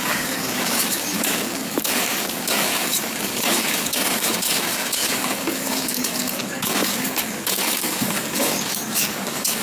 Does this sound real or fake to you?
fake